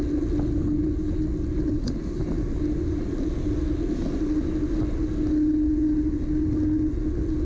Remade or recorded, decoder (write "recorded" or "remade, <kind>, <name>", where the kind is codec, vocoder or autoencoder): recorded